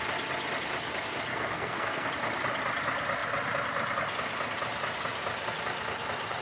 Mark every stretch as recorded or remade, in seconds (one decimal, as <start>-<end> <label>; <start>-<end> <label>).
0.0-1.3 recorded; 1.3-2.1 remade; 2.1-6.4 recorded